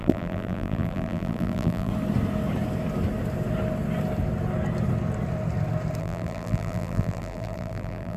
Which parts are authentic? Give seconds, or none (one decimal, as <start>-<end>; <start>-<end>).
1.9-6.0